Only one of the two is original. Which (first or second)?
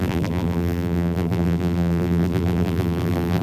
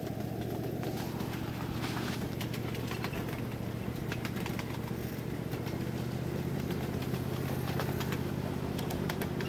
second